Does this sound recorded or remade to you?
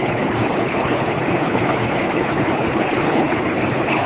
remade